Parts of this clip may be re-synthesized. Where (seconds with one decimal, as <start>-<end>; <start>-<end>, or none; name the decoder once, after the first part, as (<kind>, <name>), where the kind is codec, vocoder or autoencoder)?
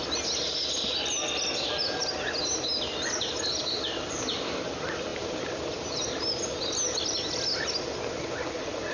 none